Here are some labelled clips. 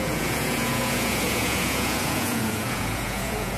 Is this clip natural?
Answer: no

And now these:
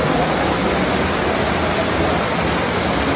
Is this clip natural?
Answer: yes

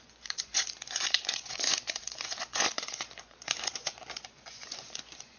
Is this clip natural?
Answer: no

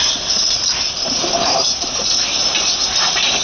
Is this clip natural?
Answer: yes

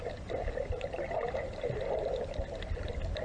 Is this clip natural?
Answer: yes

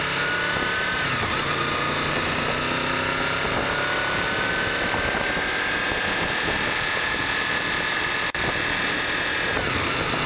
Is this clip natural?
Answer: yes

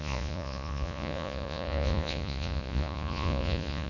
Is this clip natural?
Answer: no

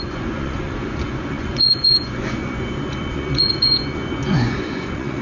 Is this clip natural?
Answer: no